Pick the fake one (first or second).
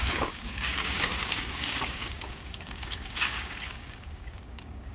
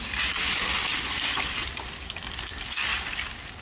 first